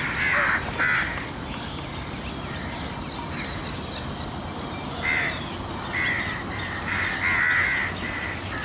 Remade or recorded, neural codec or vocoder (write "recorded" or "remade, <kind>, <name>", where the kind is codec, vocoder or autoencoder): recorded